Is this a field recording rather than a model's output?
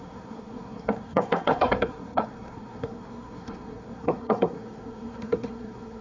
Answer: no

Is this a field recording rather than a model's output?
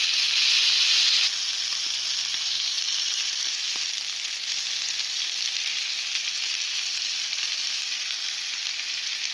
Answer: yes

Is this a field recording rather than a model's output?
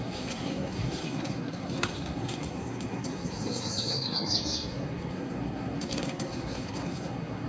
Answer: no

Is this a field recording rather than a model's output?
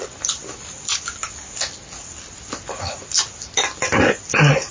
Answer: yes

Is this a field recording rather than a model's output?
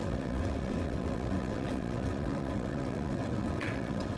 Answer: no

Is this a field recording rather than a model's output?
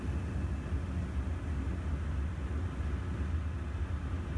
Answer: yes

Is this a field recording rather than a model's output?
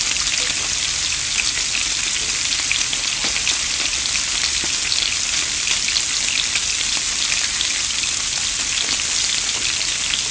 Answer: yes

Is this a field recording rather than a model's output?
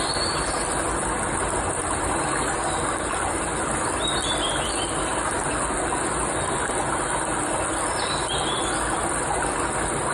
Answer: yes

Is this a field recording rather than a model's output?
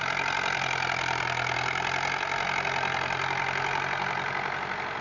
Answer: yes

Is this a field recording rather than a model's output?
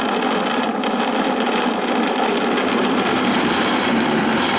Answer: yes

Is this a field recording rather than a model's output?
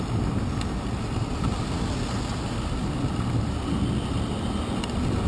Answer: yes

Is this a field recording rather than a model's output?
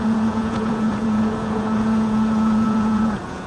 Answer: no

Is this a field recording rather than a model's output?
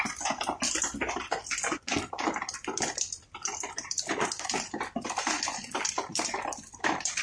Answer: yes